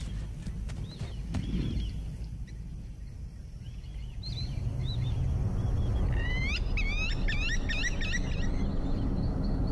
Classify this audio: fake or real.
real